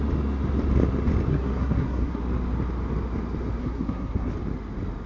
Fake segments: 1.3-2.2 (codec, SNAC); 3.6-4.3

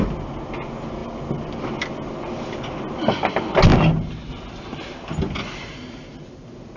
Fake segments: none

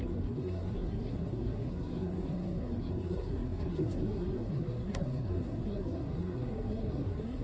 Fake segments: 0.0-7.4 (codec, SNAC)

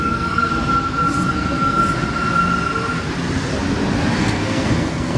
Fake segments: 0.0-0.5 (codec, SNAC); 1.3-1.8; 4.2-5.2